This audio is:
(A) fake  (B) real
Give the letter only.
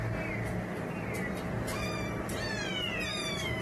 B